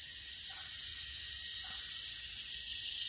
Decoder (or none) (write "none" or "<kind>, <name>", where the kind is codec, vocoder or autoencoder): none